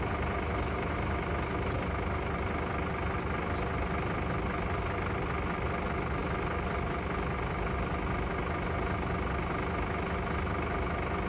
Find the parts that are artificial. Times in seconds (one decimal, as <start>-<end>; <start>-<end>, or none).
none